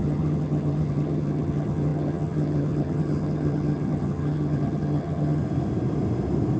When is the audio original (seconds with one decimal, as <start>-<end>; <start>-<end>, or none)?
5.4-6.6